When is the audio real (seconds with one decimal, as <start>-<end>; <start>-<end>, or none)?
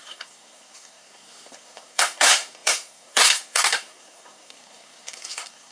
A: none